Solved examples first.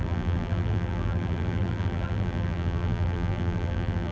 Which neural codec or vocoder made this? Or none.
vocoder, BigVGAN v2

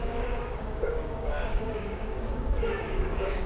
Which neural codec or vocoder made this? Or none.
codec, DAC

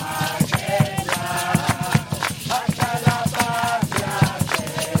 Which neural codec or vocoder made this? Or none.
none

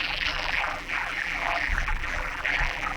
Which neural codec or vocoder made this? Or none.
vocoder, BigVGAN v2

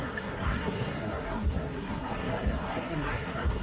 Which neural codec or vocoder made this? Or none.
codec, SNAC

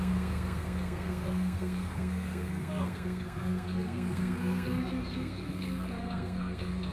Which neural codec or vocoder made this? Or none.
codec, SNAC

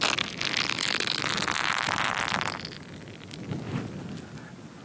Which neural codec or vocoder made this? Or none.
none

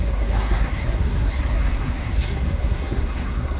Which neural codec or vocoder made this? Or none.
codec, SNAC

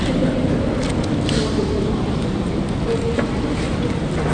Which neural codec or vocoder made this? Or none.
none